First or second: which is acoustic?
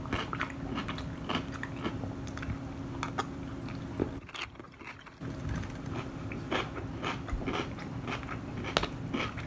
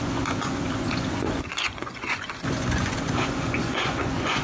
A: first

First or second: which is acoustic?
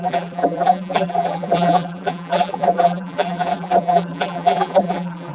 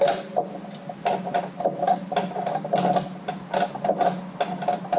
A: second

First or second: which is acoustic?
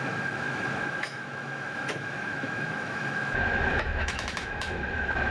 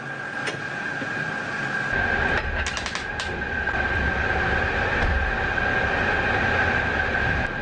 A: second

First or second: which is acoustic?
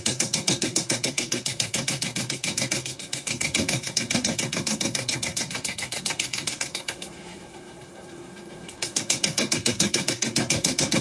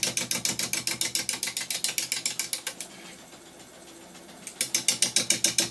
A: second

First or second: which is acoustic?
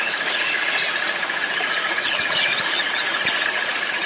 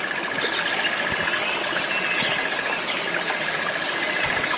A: second